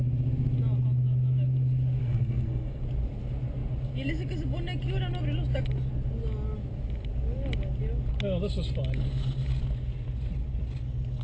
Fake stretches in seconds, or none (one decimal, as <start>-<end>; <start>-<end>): 2.0-2.8